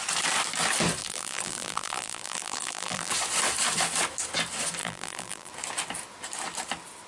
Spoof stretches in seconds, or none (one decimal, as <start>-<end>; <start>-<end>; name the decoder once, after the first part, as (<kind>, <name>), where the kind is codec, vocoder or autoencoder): 1.0-3.1 (vocoder, BigVGAN v2); 4.8-5.5